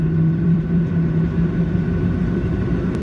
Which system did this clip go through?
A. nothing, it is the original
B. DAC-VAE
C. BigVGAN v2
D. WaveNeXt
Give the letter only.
C